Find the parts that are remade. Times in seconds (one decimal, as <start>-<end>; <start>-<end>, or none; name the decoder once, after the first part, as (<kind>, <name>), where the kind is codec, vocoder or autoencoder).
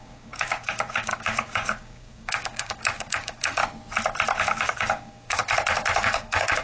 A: 0.0-3.6 (codec, DAC); 4.4-5.4; 6.0-6.6